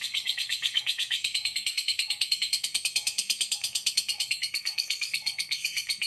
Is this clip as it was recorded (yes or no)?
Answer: no